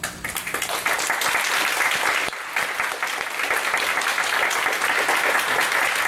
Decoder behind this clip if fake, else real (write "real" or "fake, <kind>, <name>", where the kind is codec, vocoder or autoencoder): real